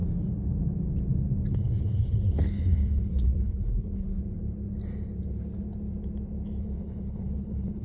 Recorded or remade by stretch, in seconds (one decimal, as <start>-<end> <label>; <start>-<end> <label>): 0.0-1.5 recorded; 1.5-4.2 remade; 4.2-6.6 recorded; 6.6-7.8 remade